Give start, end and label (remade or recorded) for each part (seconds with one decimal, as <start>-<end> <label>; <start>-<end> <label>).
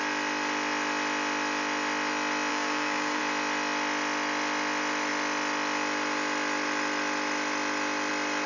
0.0-2.5 recorded; 2.5-3.2 remade; 3.2-8.5 recorded